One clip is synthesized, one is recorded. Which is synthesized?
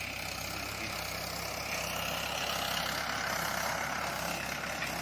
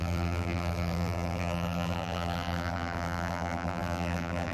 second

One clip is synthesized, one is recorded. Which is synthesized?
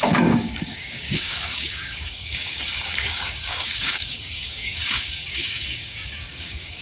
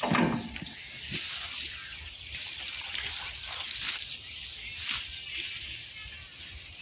first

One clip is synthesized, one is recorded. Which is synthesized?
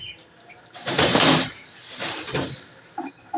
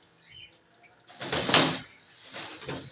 first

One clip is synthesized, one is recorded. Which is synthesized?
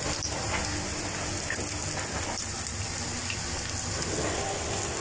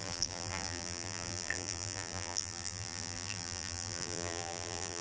second